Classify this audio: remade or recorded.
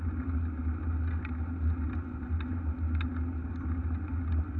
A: recorded